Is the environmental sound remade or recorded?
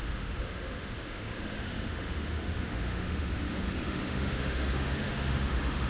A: remade